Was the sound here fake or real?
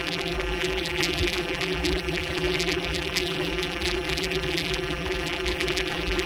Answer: fake